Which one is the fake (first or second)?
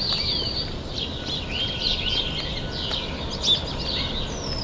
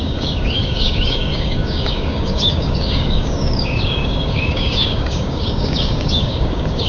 second